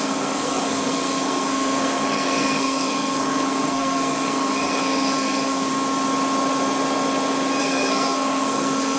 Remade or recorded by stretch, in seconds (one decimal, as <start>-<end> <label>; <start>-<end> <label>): 0.0-5.7 remade; 5.7-7.6 recorded; 7.6-9.0 remade